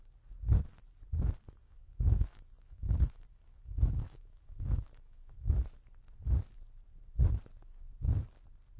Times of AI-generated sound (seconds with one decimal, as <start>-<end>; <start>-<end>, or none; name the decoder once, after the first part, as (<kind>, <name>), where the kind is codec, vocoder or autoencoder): 1.6-5.6 (autoencoder, DAC-VAE)